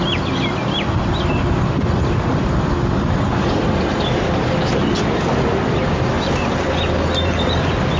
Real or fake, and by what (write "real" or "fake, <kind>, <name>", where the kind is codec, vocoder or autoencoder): real